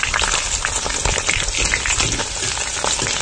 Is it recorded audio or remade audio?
recorded